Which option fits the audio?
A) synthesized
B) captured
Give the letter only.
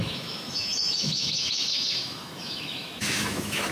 A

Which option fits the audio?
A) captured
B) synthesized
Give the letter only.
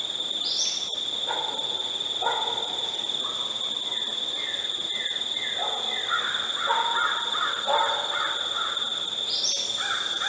A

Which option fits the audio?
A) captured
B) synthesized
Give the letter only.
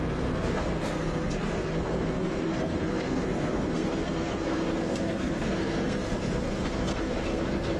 B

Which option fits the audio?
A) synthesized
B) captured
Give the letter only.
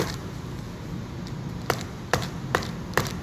B